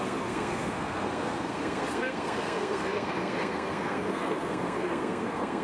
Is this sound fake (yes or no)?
yes